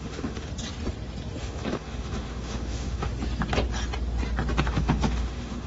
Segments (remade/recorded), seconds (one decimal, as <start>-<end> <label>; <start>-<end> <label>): 0.0-0.5 remade; 0.5-1.4 recorded; 1.4-3.1 remade; 3.1-4.6 recorded; 4.6-5.7 remade